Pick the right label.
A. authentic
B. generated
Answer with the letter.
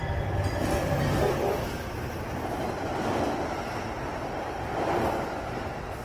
B